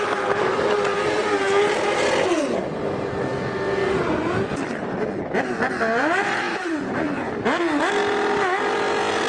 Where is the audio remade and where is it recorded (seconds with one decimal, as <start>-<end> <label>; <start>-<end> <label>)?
0.0-6.5 recorded; 6.5-7.3 remade; 7.3-9.3 recorded